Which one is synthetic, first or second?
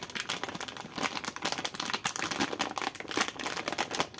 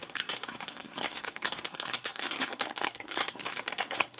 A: second